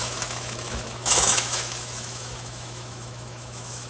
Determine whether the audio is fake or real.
fake